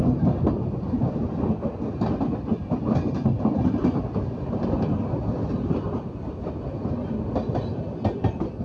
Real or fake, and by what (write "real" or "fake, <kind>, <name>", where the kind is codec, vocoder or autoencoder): real